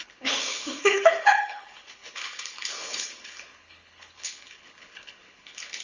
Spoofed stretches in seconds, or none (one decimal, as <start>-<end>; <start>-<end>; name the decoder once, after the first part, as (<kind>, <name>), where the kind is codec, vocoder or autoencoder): 0.0-5.8 (codec, HILCodec)